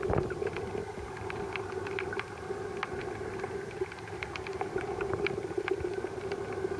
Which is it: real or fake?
fake